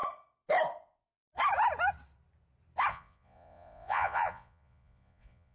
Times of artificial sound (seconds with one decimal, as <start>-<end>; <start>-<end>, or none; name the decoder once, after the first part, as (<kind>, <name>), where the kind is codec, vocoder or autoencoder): 2.9-5.5 (vocoder, Vocos)